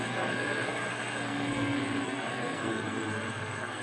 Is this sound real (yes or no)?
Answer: no